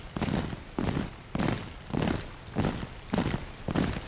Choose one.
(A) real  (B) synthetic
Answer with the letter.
B